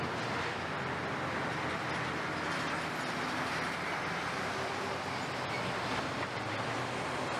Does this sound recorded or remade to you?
recorded